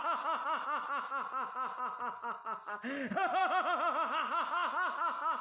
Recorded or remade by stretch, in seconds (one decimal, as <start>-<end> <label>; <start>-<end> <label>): 0.0-5.4 recorded